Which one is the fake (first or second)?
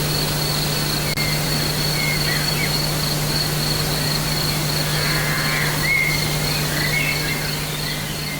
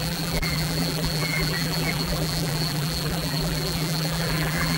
second